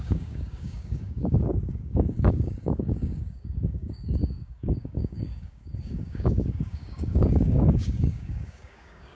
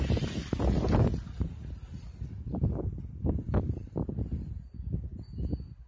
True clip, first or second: second